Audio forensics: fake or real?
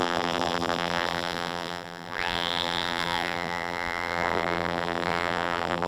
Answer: fake